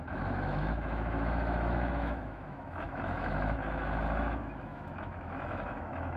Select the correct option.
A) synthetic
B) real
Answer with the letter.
A